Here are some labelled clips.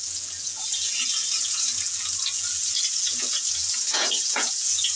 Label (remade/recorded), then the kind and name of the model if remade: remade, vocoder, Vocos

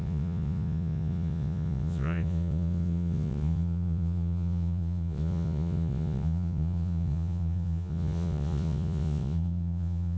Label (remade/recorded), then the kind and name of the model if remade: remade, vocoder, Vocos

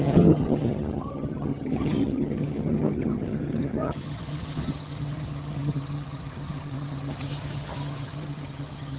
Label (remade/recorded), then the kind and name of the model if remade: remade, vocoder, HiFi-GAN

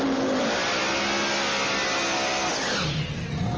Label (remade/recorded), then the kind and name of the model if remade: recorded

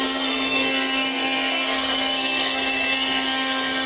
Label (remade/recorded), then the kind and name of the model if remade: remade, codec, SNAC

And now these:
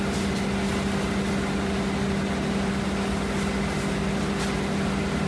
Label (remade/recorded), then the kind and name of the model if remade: recorded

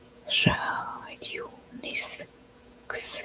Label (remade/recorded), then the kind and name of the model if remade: remade, vocoder, Vocos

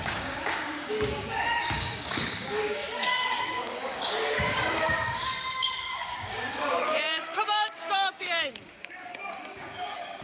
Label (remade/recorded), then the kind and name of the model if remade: remade, codec, DAC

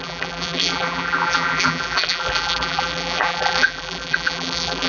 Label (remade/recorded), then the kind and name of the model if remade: remade, vocoder, BigVGAN v2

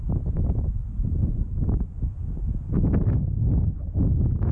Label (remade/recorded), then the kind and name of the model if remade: recorded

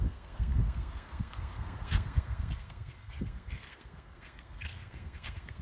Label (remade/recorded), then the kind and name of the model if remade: remade, codec, SNAC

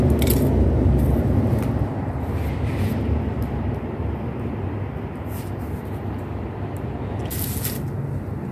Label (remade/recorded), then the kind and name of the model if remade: recorded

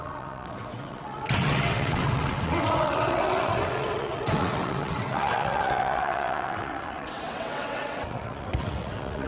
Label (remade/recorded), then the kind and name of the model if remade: remade, vocoder, WaveNeXt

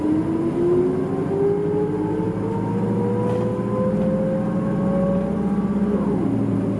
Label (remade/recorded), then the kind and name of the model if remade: recorded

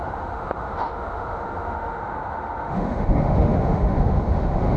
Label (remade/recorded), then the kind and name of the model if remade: remade, autoencoder, DAC-VAE